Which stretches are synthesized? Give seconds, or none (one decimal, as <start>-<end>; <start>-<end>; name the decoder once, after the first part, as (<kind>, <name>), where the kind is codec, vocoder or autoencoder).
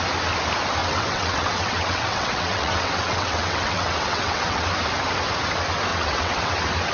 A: 0.8-4.7 (vocoder, WaveNeXt); 5.9-6.5